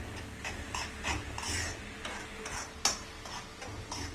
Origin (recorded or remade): recorded